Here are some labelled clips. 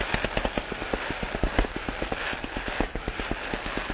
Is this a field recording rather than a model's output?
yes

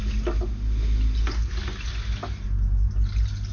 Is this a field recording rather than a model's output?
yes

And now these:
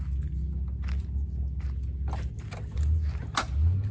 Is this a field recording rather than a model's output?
yes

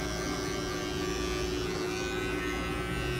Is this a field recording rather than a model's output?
yes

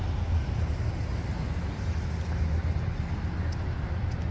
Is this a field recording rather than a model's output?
yes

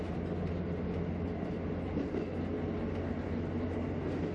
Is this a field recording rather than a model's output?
yes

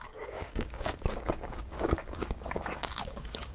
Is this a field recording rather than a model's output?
no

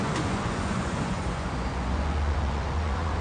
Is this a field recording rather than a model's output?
no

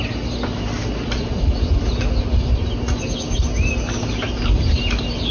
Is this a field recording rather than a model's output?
yes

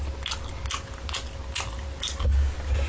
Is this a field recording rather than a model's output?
yes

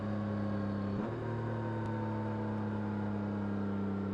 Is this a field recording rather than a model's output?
yes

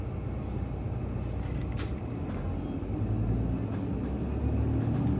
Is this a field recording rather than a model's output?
yes